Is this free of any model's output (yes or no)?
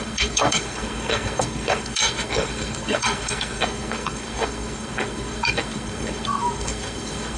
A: no